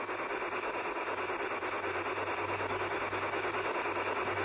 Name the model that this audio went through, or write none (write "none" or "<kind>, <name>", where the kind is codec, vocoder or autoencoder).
none